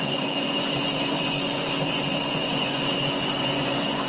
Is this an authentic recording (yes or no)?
no